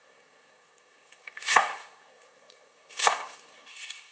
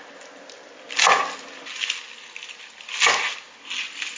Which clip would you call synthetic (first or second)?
first